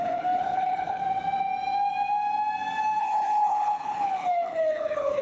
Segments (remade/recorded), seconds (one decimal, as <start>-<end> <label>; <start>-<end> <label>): 0.0-1.0 remade; 1.0-3.0 recorded; 3.0-5.2 remade